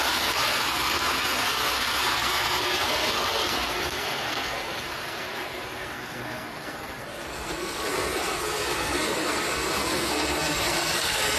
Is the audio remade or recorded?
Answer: remade